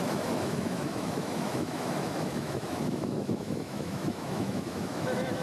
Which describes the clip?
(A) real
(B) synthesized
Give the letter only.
B